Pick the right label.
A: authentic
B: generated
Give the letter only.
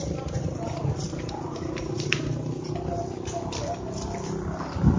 A